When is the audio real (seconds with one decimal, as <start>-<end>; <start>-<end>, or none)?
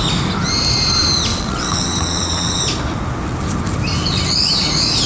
0.0-1.3; 2.6-5.1